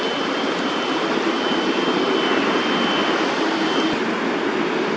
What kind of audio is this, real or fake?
real